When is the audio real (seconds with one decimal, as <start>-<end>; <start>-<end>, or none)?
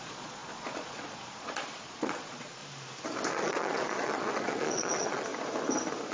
2.6-3.3; 5.3-6.1